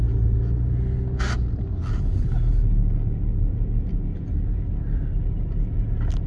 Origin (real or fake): real